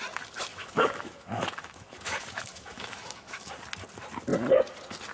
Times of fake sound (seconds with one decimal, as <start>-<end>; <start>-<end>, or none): 0.5-3.6